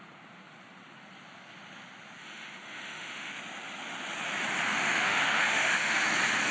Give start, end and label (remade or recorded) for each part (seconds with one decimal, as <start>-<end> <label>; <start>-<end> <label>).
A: 0.0-2.2 recorded; 2.2-3.3 remade; 3.3-4.7 recorded; 4.7-5.9 remade; 5.9-6.5 recorded